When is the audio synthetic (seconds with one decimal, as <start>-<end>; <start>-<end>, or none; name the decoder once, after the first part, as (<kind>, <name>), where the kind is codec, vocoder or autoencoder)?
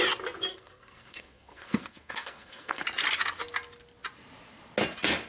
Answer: 0.5-2.8 (codec, SNAC)